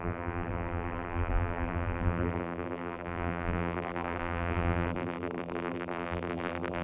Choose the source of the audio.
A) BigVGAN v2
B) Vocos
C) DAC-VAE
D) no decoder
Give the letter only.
A